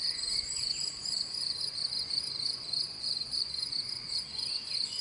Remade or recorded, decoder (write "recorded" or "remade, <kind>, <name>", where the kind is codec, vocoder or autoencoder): remade, vocoder, Vocos